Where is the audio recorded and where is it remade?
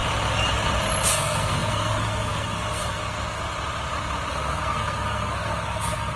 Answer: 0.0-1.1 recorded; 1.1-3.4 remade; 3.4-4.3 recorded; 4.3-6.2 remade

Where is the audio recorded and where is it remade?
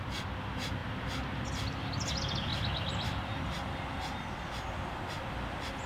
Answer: 0.0-5.9 recorded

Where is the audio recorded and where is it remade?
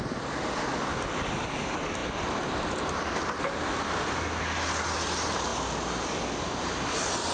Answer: 0.0-7.3 recorded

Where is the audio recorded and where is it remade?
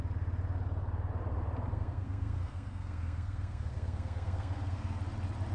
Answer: 0.0-1.7 recorded; 1.7-5.0 remade; 5.0-5.5 recorded